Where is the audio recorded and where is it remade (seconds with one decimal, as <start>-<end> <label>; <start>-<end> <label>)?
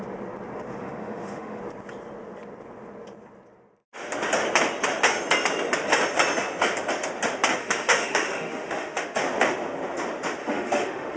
0.0-0.8 recorded; 0.8-1.6 remade; 1.6-7.6 recorded; 7.6-9.2 remade; 9.2-10.4 recorded; 10.4-11.2 remade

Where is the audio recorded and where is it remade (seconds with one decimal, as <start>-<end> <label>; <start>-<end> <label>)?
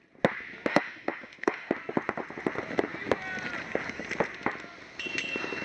0.0-0.7 recorded; 0.7-1.7 remade; 1.7-5.6 recorded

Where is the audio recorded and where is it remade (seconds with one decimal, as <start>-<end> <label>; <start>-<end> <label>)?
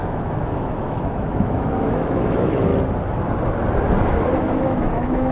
0.0-2.7 remade; 2.7-4.4 recorded; 4.4-5.3 remade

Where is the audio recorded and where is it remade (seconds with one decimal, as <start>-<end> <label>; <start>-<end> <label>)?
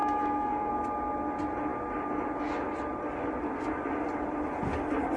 0.0-0.7 remade; 0.7-5.2 recorded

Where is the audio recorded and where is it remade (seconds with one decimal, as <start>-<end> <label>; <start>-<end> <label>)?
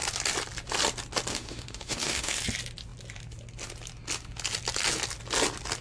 0.0-1.3 recorded; 1.3-2.4 remade; 2.4-5.8 recorded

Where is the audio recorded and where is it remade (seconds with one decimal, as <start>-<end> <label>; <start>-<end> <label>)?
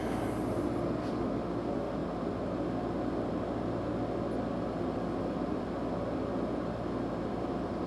0.0-7.9 recorded